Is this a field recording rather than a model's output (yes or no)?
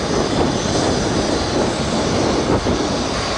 yes